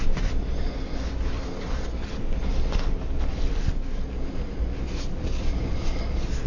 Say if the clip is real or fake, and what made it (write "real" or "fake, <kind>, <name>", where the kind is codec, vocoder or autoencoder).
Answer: real